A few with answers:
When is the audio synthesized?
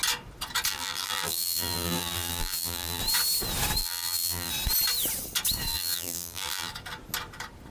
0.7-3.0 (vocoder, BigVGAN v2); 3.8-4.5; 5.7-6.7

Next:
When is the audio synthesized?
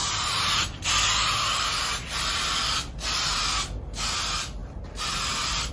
0.0-3.4 (vocoder, BigVGAN v2); 4.6-5.7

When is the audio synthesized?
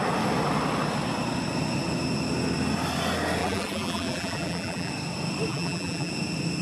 3.4-4.9 (vocoder, BigVGAN v2); 5.5-6.1